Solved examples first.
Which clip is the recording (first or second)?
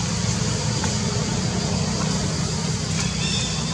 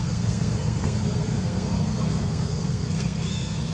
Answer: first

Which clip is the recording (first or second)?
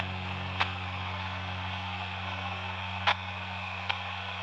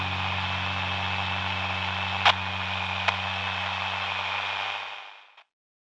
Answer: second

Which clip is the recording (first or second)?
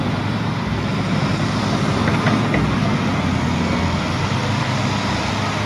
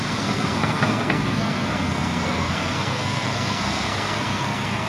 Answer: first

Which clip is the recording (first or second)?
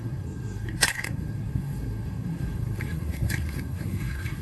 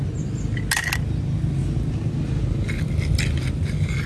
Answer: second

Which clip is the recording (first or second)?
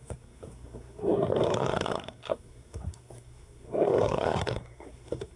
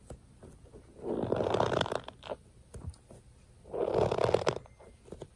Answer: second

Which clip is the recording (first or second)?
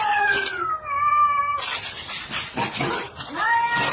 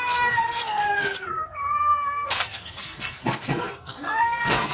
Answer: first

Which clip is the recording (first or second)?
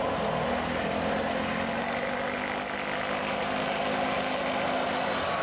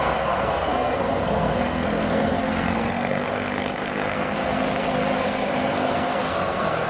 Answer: first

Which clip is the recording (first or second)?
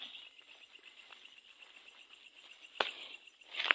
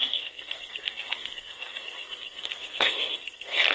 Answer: first